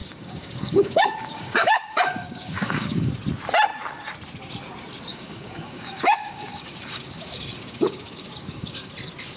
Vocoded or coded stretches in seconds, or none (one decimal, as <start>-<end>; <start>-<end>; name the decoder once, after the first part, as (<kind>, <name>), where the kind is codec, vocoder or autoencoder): 0.0-3.1 (codec, DAC); 5.1-8.9

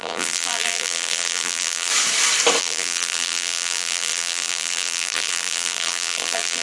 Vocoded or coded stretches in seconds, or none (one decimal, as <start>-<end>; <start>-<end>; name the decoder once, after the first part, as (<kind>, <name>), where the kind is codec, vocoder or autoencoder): 0.0-1.9 (vocoder, BigVGAN v2); 2.6-6.6

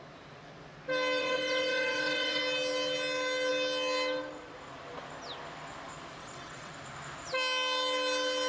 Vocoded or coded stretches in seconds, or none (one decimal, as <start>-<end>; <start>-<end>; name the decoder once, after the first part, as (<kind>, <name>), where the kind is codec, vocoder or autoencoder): 1.2-2.4 (vocoder, WaveNeXt); 6.2-6.7

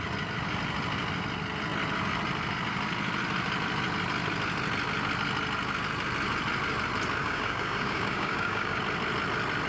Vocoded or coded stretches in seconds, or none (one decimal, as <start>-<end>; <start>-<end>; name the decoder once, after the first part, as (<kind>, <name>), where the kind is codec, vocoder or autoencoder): 7.2-8.8 (codec, DAC)

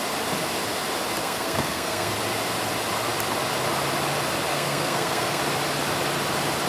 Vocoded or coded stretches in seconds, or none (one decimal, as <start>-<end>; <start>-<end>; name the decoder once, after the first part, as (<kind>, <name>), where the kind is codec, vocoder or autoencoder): 1.2-2.1 (codec, SNAC); 4.5-5.4

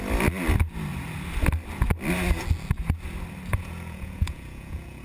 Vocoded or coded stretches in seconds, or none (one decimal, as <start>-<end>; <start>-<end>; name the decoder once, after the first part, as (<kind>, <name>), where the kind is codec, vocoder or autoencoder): 3.5-5.0 (vocoder, Vocos)

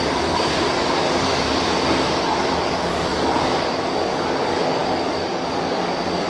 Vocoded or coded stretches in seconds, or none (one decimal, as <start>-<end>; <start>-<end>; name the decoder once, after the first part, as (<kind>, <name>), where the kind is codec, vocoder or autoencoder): 0.0-6.3 (codec, DAC)